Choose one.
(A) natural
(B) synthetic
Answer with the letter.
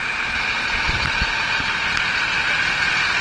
A